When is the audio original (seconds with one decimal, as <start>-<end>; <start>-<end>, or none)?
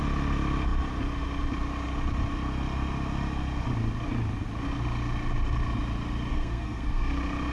0.0-6.3; 7.1-7.5